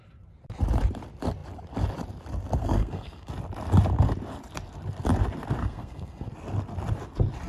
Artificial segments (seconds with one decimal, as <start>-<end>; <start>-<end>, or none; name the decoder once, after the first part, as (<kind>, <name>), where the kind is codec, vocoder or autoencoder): 2.6-3.3 (codec, SNAC); 5.6-6.3

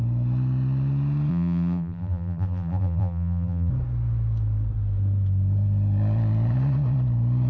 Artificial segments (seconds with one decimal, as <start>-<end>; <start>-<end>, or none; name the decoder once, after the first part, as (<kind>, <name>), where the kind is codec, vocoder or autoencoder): 1.3-3.7 (vocoder, BigVGAN v2)

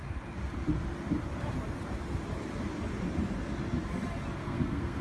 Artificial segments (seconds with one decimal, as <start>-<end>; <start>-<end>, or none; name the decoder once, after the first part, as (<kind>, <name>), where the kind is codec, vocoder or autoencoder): 4.4-5.0 (codec, SNAC)

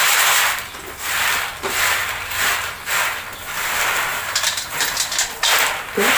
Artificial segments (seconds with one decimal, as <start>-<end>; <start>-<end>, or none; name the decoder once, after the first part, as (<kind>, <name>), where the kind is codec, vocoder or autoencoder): 2.0-2.7 (vocoder, BigVGAN v2); 4.1-4.9

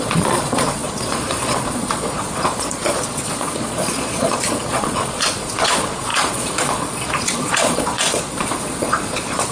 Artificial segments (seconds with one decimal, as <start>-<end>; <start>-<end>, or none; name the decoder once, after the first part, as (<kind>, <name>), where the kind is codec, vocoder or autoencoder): 0.0-9.5 (vocoder, Vocos)

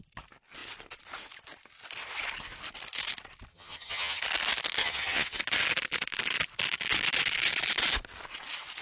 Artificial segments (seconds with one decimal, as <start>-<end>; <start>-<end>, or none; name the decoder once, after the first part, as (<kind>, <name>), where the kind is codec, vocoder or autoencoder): 3.5-4.2 (vocoder, HiFi-GAN); 4.8-5.4

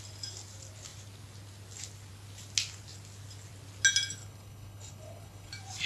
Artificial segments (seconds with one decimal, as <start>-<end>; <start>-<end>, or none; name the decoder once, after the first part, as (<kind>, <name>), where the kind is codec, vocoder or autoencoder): 4.2-5.5 (codec, HILCodec)

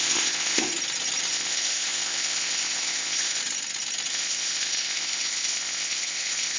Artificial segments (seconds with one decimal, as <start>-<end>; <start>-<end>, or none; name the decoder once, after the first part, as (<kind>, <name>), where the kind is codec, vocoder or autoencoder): 0.0-0.7 (codec, ZipCodec); 1.3-3.4; 4.1-6.6